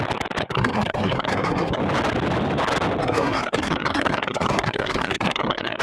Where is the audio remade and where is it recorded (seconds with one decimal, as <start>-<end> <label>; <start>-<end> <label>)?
0.0-0.4 recorded; 0.4-1.8 remade; 1.8-3.0 recorded; 3.0-5.8 remade